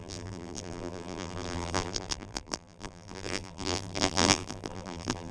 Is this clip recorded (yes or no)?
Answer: no